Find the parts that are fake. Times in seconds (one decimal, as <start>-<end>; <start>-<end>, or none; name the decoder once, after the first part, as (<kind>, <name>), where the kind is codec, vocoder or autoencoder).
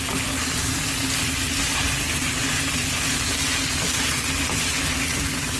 none